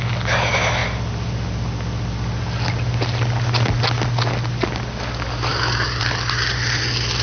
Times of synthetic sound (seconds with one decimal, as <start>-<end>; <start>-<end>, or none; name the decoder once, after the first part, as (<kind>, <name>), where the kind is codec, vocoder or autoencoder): none